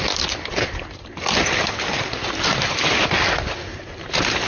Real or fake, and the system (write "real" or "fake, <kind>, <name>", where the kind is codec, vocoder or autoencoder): real